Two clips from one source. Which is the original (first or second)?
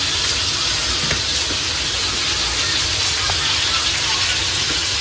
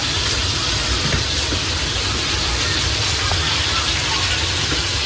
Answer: first